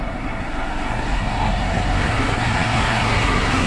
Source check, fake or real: fake